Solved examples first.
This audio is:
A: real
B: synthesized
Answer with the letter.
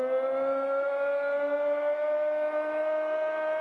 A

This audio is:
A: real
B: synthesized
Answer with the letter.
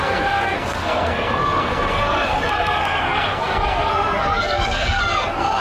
B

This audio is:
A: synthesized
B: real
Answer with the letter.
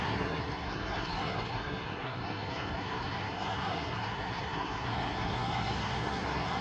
A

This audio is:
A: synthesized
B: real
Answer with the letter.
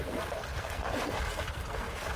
A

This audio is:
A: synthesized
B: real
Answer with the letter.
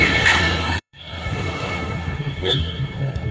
A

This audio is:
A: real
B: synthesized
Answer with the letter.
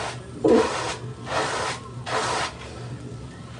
A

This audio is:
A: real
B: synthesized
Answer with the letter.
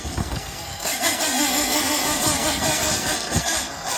B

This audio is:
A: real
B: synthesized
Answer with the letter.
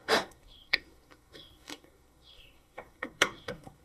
B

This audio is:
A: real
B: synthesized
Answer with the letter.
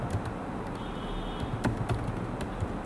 A